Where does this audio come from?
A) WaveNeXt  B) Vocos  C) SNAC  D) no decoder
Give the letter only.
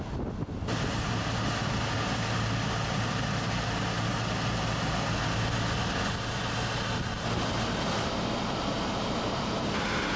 D